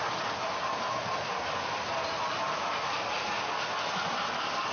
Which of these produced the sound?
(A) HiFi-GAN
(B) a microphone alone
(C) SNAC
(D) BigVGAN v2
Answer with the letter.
B